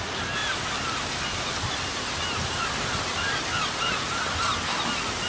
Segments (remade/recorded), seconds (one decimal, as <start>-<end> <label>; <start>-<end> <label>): 0.0-5.3 recorded